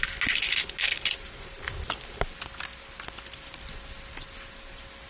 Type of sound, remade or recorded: recorded